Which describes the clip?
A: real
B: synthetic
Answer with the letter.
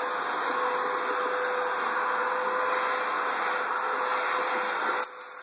A